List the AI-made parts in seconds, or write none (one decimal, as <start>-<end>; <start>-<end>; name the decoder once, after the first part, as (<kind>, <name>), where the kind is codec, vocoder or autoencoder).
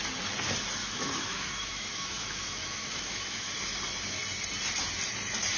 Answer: 0.8-3.5 (autoencoder, DAC-VAE)